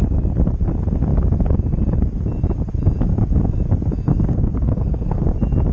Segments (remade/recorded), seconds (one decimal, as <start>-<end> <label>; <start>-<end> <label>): 0.0-4.1 recorded; 4.1-5.2 remade; 5.2-5.7 recorded